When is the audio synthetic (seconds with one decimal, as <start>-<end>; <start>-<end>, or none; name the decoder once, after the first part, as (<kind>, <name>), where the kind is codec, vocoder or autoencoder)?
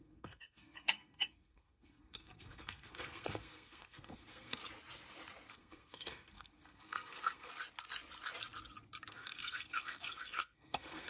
0.0-4.6 (codec, SNAC); 5.5-7.5; 9.1-11.1